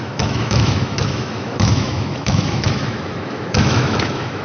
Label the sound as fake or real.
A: fake